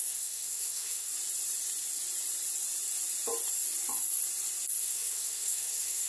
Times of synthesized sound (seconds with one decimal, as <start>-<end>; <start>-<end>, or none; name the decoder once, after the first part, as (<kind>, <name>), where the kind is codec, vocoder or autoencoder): 0.0-1.1 (codec, SNAC); 4.8-6.1